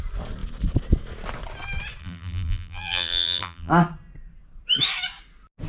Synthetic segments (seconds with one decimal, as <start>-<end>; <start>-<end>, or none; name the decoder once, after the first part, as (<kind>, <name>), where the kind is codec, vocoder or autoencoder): 2.0-3.7 (vocoder, BigVGAN v2)